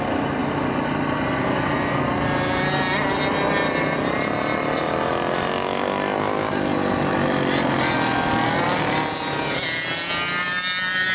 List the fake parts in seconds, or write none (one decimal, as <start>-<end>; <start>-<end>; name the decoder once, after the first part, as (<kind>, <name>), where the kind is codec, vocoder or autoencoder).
none